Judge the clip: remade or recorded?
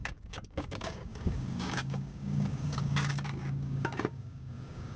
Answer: remade